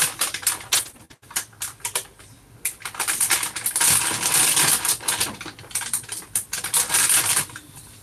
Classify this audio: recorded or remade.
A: recorded